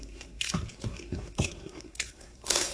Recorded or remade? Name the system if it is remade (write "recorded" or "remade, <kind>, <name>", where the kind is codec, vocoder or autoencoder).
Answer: remade, codec, SNAC